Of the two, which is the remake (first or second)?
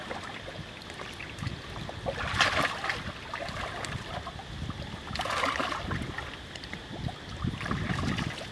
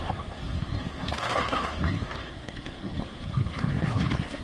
second